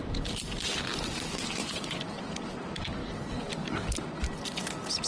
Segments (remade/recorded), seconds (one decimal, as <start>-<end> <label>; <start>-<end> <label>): 0.0-1.6 recorded; 1.6-2.1 remade; 2.1-5.1 recorded